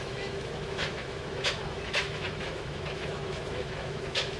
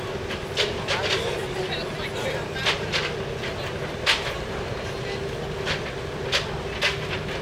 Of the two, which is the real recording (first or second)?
second